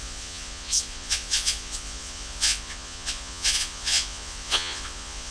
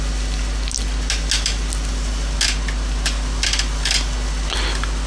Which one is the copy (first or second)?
first